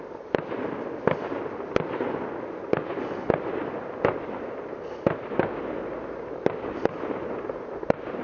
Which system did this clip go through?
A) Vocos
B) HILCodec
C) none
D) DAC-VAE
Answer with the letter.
C